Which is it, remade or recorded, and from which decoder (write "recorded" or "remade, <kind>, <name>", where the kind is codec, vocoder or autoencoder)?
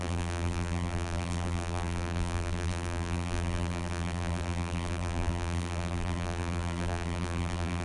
remade, vocoder, BigVGAN v2